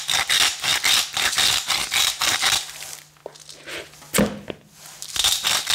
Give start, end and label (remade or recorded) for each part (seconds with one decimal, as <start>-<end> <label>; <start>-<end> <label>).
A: 0.0-5.7 recorded